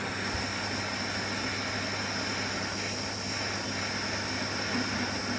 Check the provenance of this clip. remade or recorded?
recorded